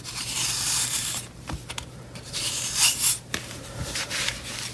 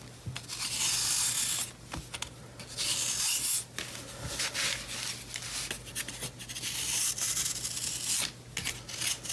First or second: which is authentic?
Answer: second